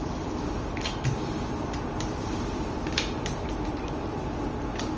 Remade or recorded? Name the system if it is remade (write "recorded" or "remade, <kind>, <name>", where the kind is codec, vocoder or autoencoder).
recorded